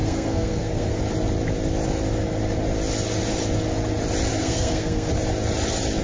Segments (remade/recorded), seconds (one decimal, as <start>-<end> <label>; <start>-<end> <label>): 0.0-1.0 remade; 1.0-4.4 recorded; 4.4-5.1 remade; 5.1-6.0 recorded